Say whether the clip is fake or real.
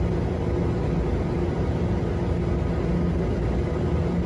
real